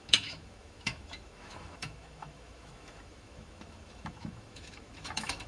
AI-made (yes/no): yes